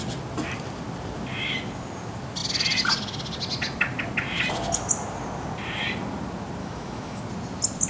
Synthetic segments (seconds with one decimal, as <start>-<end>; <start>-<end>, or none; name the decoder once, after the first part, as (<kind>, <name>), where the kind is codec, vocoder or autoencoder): 6.6-7.2 (autoencoder, DAC-VAE)